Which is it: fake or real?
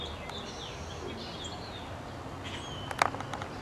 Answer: real